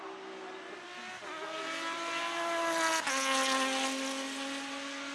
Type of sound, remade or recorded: recorded